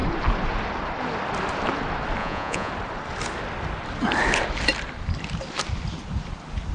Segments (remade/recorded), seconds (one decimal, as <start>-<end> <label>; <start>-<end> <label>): 0.0-2.2 recorded; 2.2-2.7 remade; 2.7-6.7 recorded

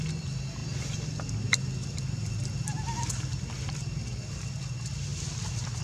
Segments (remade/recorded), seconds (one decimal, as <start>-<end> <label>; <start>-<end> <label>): 0.0-5.8 recorded

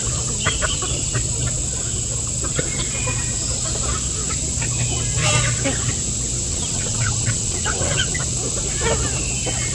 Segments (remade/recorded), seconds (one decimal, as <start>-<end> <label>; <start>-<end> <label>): 0.0-6.5 recorded; 6.5-8.2 remade; 8.2-9.7 recorded

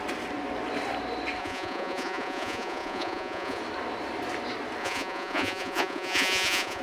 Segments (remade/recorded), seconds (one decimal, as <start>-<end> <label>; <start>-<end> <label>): 0.0-1.4 recorded; 1.4-3.6 remade; 3.6-4.8 recorded; 4.8-6.8 remade

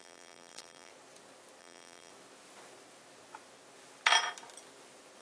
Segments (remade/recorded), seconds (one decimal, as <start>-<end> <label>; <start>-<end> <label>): 0.0-0.9 remade; 0.9-1.6 recorded; 1.6-2.1 remade; 2.1-5.2 recorded

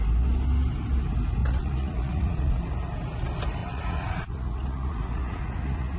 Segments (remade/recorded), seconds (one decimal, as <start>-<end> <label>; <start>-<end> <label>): 0.0-1.4 recorded; 1.4-2.5 remade; 2.5-3.6 recorded; 3.6-6.0 remade

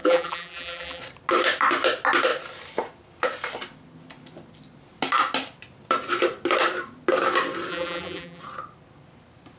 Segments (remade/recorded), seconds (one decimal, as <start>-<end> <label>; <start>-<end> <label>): 0.0-1.0 remade; 1.0-7.7 recorded; 7.7-8.4 remade; 8.4-9.6 recorded

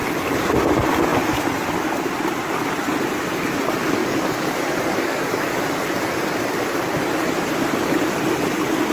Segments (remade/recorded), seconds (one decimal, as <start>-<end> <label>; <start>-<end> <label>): 0.0-4.0 recorded; 4.0-5.6 remade; 5.6-8.9 recorded